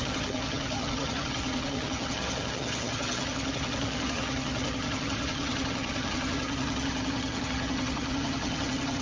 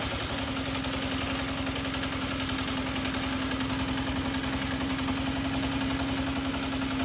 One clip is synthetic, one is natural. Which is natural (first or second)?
second